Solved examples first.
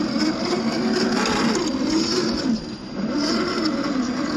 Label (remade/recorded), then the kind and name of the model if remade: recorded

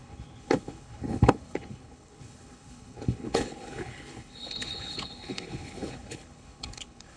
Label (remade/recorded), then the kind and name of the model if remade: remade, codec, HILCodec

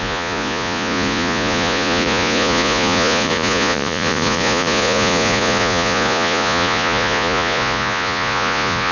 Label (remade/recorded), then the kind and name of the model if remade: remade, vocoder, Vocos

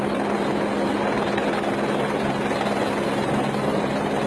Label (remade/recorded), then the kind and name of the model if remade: recorded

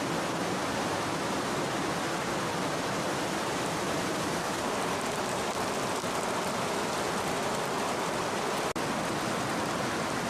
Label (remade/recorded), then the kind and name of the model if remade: recorded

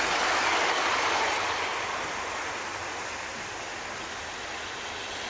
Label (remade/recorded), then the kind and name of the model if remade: recorded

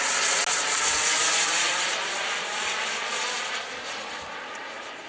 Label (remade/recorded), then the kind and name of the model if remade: recorded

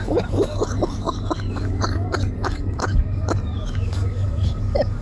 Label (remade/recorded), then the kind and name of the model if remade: remade, codec, DAC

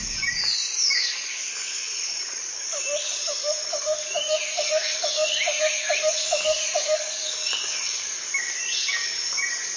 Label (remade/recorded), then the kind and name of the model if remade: remade, codec, DAC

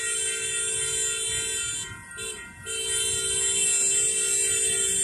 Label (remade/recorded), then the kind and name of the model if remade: recorded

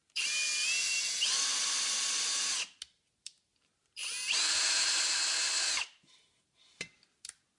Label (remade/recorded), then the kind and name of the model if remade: recorded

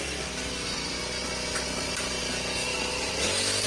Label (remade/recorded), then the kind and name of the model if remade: recorded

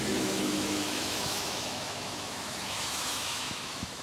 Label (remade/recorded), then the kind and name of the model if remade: remade, autoencoder, DAC-VAE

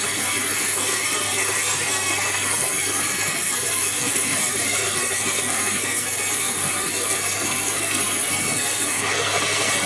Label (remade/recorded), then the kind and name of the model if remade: remade, codec, SNAC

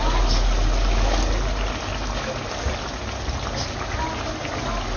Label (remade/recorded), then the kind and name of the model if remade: recorded